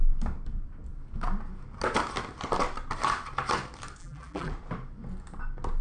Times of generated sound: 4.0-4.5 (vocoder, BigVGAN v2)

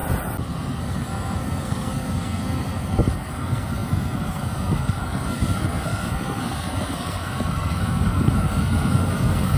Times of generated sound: 0.8-9.6 (codec, SNAC)

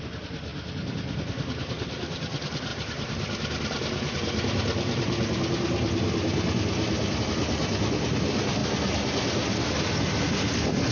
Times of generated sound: none

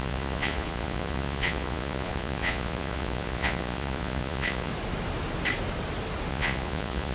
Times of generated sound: 0.0-4.7 (vocoder, Vocos); 6.3-7.1

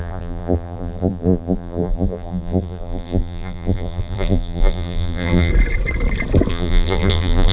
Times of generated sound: 0.0-5.5 (vocoder, BigVGAN v2); 6.5-7.5

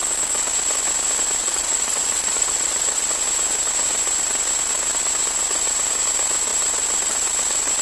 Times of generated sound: 1.4-3.0 (vocoder, Vocos)

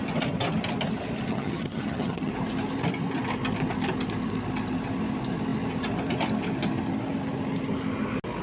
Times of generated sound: 1.3-2.3 (vocoder, HiFi-GAN)